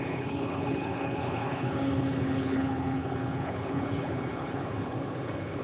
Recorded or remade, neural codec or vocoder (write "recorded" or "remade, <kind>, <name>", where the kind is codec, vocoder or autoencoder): remade, codec, HILCodec